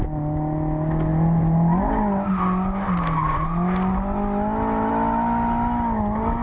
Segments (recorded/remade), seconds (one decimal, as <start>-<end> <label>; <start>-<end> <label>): 0.0-6.4 recorded

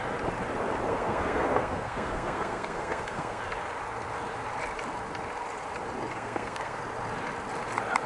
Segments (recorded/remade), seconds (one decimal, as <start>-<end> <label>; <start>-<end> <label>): 0.0-0.9 recorded; 0.9-3.4 remade; 3.4-6.1 recorded; 6.1-6.8 remade; 6.8-8.1 recorded

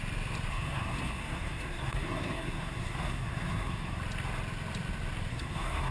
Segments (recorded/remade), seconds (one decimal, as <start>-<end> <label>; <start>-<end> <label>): 0.0-0.5 recorded; 0.5-4.0 remade; 4.0-5.3 recorded; 5.3-5.9 remade

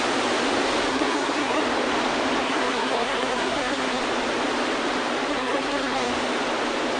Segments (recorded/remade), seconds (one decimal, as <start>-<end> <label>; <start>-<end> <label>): 0.0-0.9 recorded; 0.9-1.6 remade; 1.6-2.4 recorded; 2.4-4.0 remade; 4.0-5.3 recorded; 5.3-6.1 remade; 6.1-7.0 recorded

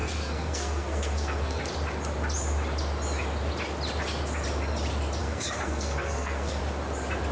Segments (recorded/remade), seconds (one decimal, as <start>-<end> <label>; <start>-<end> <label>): 0.0-1.6 remade; 1.6-5.2 recorded; 5.2-6.6 remade; 6.6-7.3 recorded

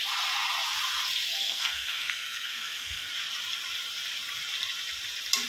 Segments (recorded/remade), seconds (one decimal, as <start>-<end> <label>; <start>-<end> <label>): 0.0-1.3 recorded; 1.3-3.1 remade; 3.1-5.5 recorded